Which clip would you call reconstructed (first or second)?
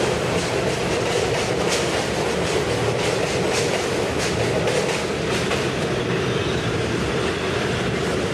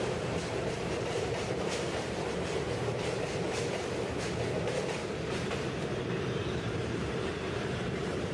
second